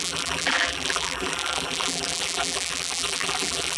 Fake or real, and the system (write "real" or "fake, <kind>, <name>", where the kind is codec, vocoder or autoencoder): fake, vocoder, BigVGAN v2